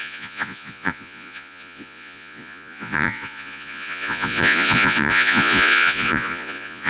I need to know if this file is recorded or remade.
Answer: remade